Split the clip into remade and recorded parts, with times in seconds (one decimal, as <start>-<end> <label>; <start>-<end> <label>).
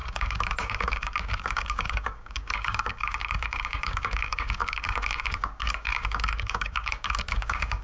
0.0-7.8 remade